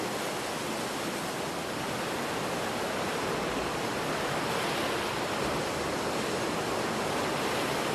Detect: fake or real real